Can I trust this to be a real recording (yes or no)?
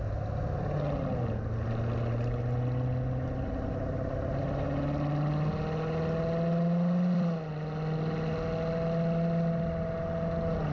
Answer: yes